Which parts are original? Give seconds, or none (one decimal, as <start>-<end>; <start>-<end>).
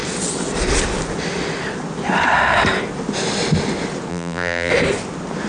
0.0-4.1; 4.7-5.5